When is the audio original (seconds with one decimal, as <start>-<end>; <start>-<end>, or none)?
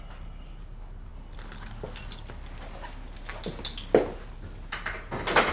0.0-5.5